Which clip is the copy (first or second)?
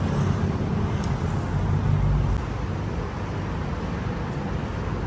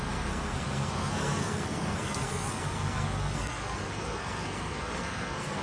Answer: second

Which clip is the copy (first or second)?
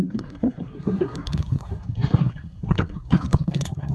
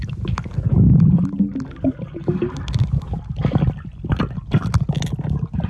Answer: first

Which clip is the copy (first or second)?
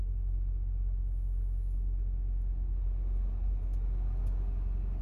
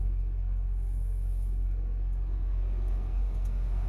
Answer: second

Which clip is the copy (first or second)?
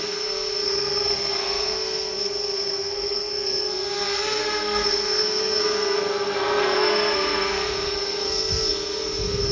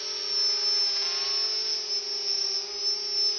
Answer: first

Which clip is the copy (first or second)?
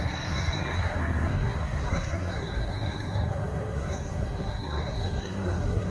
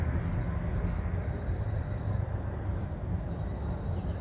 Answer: first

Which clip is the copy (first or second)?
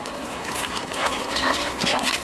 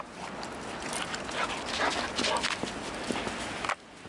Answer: first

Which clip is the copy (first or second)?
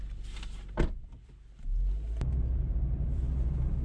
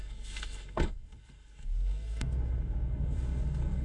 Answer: second